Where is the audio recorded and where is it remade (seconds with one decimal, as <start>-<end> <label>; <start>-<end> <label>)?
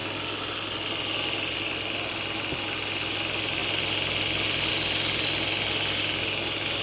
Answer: 0.0-6.8 recorded